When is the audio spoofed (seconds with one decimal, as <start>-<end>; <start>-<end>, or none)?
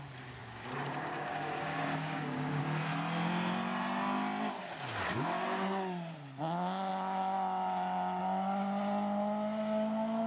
0.4-2.6